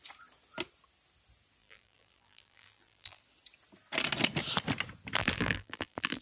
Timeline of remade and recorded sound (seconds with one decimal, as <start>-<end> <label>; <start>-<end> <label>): 0.0-1.6 recorded; 1.6-3.2 remade; 3.2-5.2 recorded; 5.2-6.2 remade